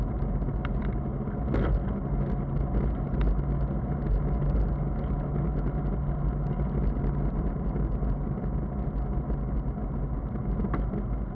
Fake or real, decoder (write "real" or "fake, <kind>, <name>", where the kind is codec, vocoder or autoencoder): real